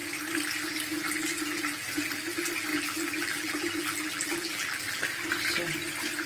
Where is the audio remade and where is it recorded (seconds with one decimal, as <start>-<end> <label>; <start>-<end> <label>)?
0.0-2.7 recorded; 2.7-5.0 remade; 5.0-6.3 recorded